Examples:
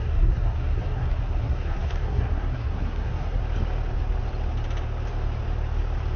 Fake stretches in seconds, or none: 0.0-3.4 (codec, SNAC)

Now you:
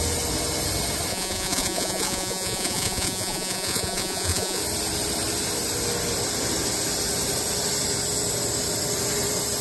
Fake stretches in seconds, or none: 1.1-4.6 (vocoder, Vocos)

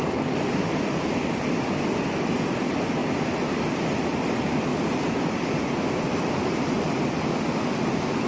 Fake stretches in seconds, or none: none

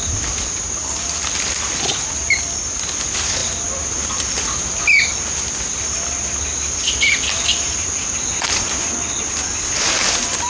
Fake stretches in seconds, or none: none

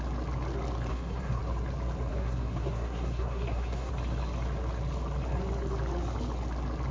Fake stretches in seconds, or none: 0.9-1.4 (codec, SNAC); 2.1-3.9

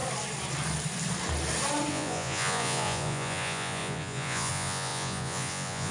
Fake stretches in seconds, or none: 1.9-5.9 (vocoder, Vocos)

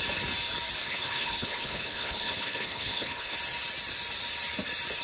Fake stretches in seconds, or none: 0.8-3.4 (codec, HILCodec)

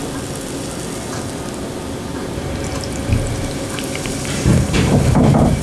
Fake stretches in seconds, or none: 2.1-5.6 (vocoder, BigVGAN v2)